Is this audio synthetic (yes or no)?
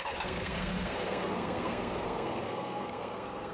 yes